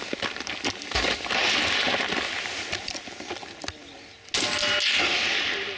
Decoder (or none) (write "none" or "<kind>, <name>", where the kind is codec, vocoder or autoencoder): none